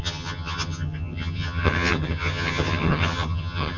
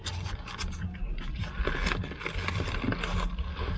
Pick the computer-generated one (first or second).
first